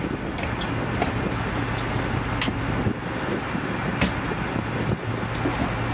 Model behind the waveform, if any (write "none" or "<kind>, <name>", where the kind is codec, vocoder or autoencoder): none